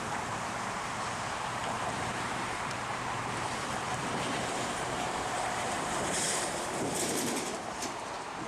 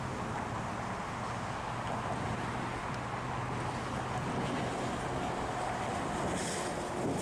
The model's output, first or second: first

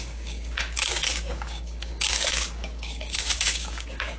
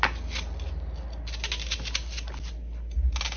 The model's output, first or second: first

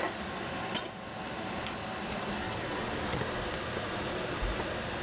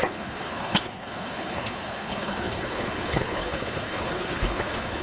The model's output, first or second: second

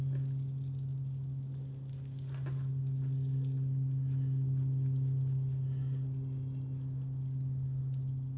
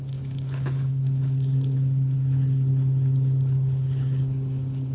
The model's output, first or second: second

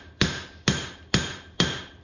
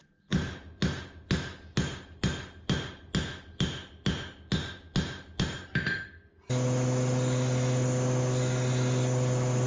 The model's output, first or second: first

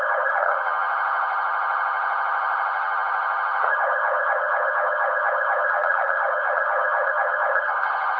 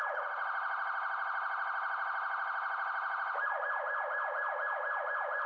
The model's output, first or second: first